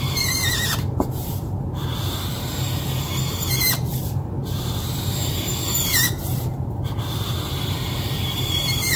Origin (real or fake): fake